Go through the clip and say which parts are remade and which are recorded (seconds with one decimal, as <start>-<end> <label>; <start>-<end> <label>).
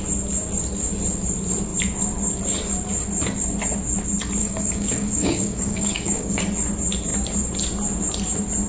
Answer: 0.0-4.4 recorded; 4.4-6.4 remade; 6.4-8.7 recorded